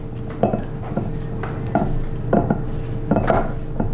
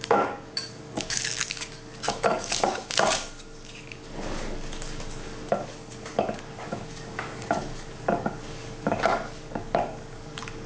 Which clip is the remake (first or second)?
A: second